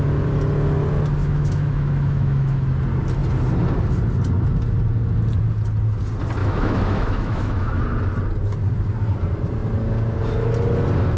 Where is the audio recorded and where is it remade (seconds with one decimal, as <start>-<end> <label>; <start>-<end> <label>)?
0.0-1.2 recorded; 1.2-2.7 remade; 2.7-6.4 recorded; 6.4-7.8 remade; 7.8-11.2 recorded